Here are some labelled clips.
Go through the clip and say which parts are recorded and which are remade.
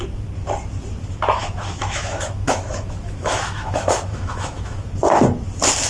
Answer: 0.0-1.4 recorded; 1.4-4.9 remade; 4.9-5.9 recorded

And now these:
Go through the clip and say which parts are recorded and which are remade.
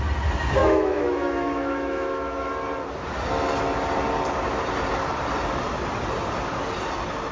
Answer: 0.0-0.6 recorded; 0.6-2.5 remade; 2.5-7.3 recorded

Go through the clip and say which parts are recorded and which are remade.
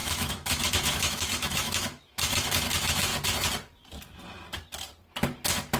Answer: 0.0-3.1 remade; 3.1-5.8 recorded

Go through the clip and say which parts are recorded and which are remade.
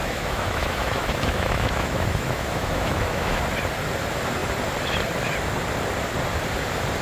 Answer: 0.0-3.4 remade; 3.4-7.0 recorded